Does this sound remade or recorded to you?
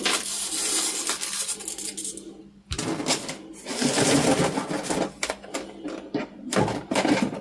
recorded